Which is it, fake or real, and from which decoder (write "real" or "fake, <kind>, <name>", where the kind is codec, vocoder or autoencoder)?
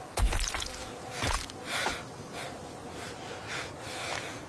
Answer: real